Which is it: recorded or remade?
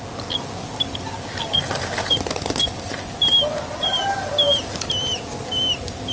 recorded